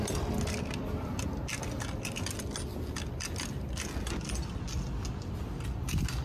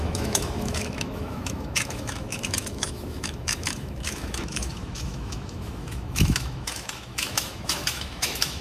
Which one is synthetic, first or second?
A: second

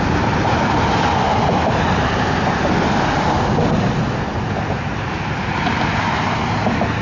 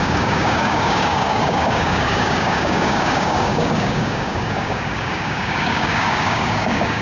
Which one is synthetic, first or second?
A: second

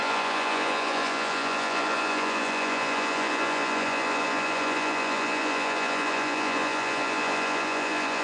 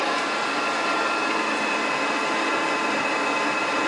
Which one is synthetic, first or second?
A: first